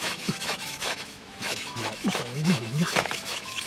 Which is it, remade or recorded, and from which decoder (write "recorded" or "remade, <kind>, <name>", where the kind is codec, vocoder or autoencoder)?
remade, autoencoder, DAC-VAE